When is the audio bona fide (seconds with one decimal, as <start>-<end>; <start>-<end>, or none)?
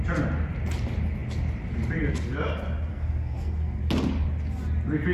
0.0-2.9; 3.8-5.1